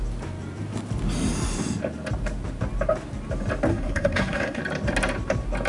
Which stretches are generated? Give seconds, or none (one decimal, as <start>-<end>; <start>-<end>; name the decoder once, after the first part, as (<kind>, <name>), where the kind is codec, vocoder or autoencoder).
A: 3.7-4.6 (codec, SNAC)